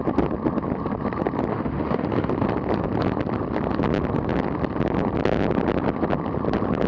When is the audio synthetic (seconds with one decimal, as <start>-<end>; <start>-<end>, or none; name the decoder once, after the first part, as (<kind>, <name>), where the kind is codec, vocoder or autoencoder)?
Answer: 1.5-2.3 (autoencoder, DAC-VAE)